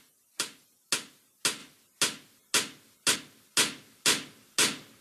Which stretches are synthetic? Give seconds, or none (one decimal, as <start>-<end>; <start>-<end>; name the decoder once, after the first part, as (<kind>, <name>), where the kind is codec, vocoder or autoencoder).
none